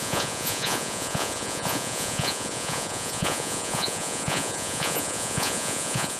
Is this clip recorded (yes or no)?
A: no